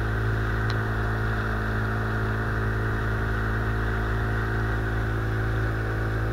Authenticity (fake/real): real